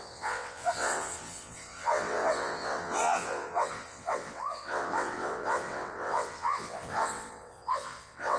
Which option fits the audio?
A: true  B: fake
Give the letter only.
B